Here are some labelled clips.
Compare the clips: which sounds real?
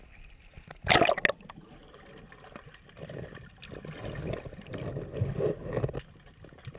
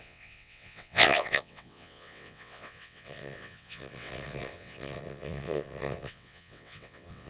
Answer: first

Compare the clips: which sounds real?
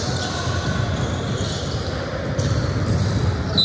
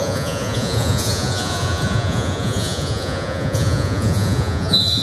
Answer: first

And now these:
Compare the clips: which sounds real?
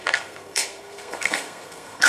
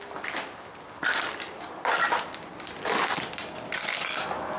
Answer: second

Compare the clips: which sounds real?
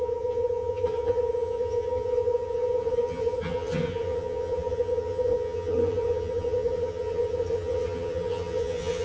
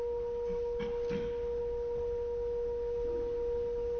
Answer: second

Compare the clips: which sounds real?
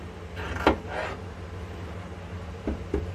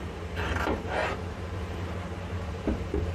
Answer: first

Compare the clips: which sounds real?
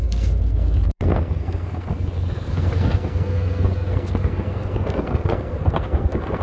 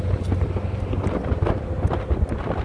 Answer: second